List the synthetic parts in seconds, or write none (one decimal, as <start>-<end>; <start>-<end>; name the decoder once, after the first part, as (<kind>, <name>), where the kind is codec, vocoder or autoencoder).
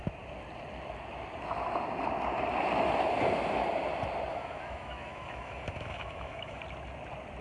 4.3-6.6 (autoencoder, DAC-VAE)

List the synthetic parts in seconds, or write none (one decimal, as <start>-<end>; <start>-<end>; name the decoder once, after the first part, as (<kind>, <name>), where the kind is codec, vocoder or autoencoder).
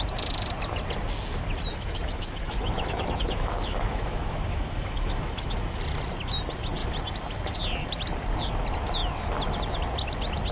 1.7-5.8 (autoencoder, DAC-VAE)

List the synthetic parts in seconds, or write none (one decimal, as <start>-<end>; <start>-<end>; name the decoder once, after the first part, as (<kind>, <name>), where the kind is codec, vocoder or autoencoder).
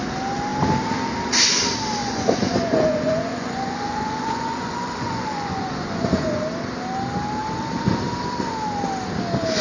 2.0-6.4 (vocoder, Vocos)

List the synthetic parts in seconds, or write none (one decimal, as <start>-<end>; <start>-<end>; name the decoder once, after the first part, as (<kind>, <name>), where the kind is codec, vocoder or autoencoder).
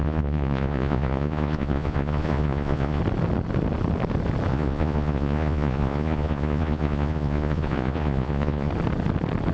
0.0-3.0 (vocoder, Vocos); 4.5-8.7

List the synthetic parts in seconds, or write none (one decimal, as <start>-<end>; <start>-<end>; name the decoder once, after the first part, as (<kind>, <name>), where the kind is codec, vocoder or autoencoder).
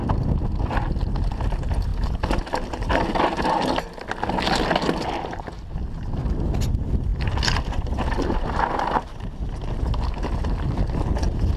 1.9-2.7 (vocoder, BigVGAN v2)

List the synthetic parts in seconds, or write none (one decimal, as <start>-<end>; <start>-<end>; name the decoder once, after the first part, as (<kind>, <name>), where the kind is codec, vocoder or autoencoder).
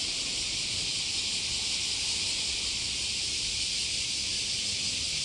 none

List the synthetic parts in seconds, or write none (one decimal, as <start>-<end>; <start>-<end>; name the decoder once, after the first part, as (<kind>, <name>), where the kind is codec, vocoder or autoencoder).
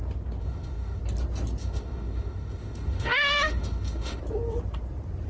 0.4-1.0 (autoencoder, DAC-VAE); 1.6-4.2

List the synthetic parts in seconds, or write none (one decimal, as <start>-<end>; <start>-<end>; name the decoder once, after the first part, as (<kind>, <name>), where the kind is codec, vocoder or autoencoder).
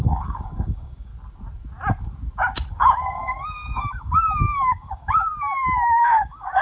0.0-1.1 (codec, DAC); 2.7-5.3; 6.0-6.6